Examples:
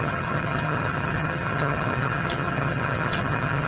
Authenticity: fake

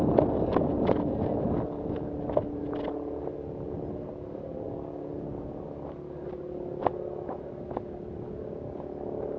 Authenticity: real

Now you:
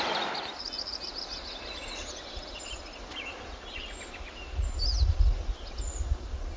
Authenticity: real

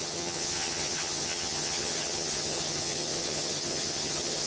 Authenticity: fake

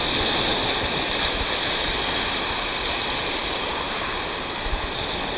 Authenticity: real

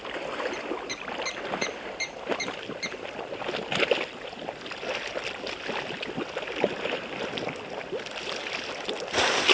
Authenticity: real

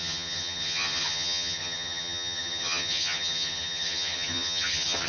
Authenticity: fake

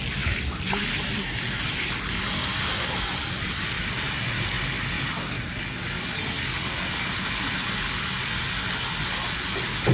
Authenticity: real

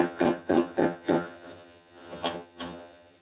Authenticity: fake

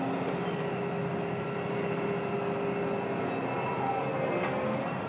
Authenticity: real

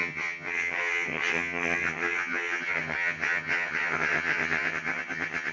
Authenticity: fake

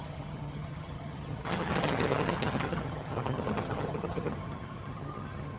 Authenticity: fake